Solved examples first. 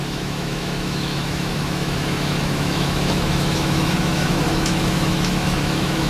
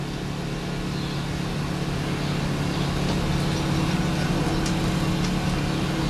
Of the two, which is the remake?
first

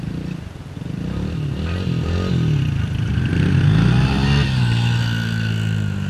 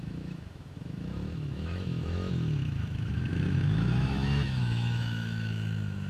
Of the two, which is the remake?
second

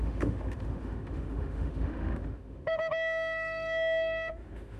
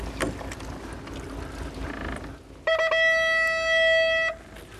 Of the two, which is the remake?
first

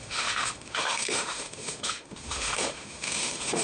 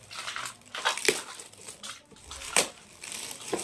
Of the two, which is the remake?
first